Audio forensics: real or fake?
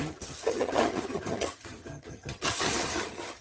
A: fake